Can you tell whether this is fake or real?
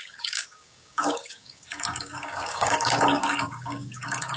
fake